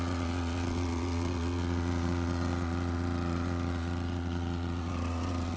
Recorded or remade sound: remade